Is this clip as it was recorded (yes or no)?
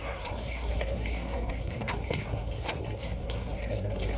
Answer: no